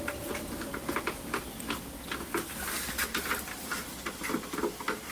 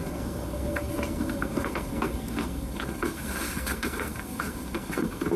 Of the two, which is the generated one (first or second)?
second